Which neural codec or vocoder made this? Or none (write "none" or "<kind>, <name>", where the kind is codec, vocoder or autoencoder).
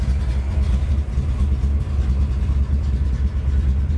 none